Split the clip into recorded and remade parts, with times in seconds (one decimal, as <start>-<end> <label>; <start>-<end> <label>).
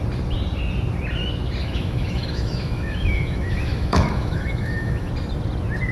0.0-1.6 recorded; 1.6-5.1 remade; 5.1-5.9 recorded